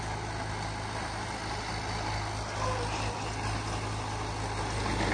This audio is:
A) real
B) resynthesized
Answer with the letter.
A